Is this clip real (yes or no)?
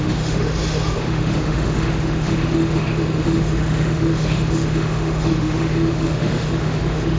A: no